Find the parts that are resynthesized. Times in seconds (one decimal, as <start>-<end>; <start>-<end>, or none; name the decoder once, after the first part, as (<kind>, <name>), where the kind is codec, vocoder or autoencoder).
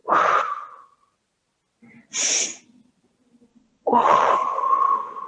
3.5-4.3 (vocoder, WaveNeXt)